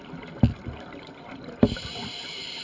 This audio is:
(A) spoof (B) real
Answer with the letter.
B